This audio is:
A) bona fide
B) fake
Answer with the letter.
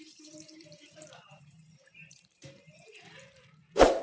B